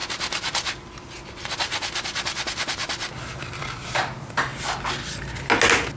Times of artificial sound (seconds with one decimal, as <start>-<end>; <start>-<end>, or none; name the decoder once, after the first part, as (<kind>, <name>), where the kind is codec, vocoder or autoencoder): none